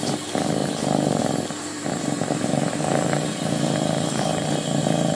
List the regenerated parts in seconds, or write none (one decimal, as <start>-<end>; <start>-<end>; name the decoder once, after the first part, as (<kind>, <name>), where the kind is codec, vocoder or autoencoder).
0.6-1.2 (vocoder, BigVGAN v2); 1.7-4.8